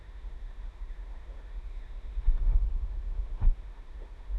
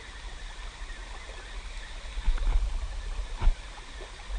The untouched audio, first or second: second